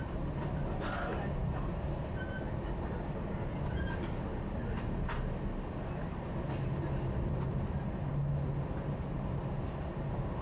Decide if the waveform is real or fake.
real